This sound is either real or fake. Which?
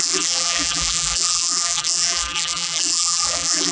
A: fake